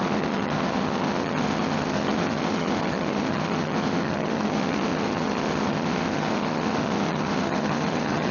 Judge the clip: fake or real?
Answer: fake